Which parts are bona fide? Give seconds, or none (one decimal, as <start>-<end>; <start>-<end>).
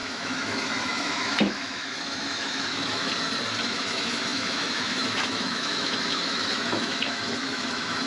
3.1-3.7